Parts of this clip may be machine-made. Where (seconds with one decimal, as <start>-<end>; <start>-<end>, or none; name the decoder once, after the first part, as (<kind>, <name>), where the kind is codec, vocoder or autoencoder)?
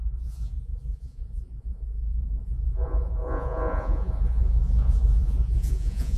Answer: 0.0-6.2 (vocoder, Vocos)